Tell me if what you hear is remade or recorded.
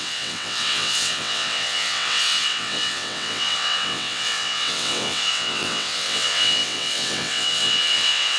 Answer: remade